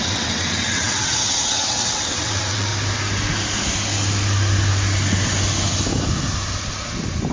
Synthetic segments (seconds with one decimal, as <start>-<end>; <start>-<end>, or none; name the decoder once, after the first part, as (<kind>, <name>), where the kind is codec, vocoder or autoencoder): 0.0-2.7 (vocoder, WaveNeXt)